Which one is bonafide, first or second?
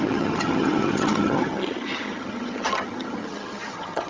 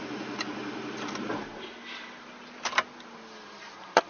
second